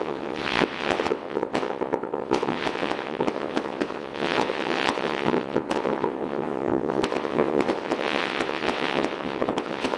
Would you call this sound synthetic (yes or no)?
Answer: yes